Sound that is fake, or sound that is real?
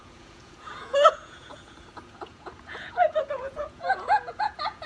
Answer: fake